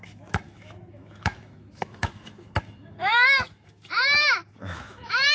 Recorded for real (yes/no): no